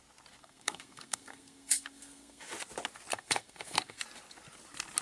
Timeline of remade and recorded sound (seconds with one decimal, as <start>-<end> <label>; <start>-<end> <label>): 0.0-0.4 recorded; 0.4-2.4 remade; 2.4-3.1 recorded; 3.1-4.0 remade; 4.0-5.0 recorded